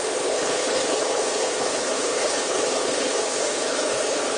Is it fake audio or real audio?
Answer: fake